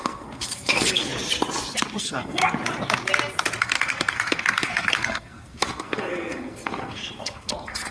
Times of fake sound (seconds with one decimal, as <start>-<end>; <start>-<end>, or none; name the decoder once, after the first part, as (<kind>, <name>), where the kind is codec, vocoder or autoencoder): 0.0-1.1 (codec, SNAC); 2.0-2.4; 3.6-7.9